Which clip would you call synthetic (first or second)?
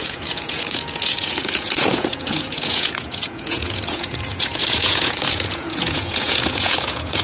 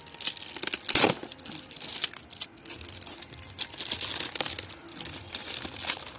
first